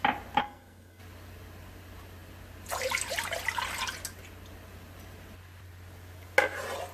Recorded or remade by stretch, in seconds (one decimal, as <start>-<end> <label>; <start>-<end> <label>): 0.0-0.4 recorded; 0.4-1.0 remade; 1.0-6.9 recorded